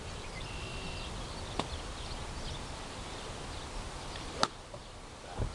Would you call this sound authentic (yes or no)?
yes